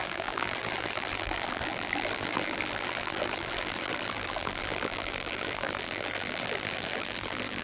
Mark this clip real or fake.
fake